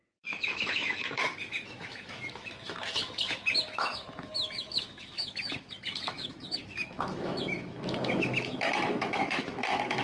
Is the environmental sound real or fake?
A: fake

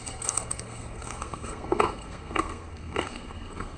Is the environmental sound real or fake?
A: fake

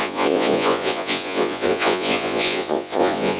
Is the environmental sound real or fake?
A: fake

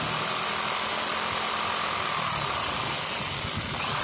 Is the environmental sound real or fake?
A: real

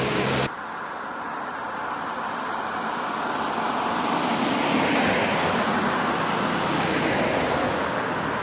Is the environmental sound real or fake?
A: real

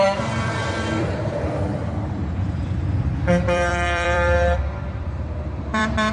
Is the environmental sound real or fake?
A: fake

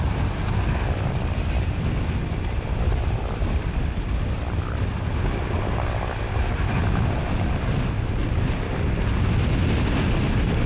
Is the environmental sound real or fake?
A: real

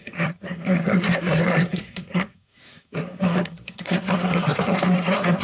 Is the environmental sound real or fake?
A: fake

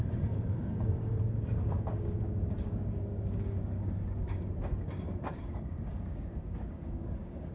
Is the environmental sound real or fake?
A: fake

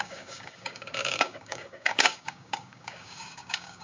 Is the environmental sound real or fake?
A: fake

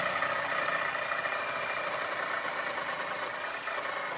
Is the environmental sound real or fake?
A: real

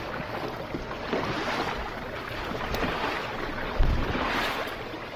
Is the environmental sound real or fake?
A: fake